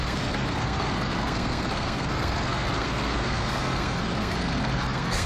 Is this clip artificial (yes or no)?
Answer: yes